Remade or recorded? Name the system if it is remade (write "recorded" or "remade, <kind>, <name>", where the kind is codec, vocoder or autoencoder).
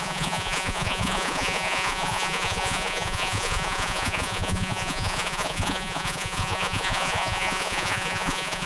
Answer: remade, vocoder, Vocos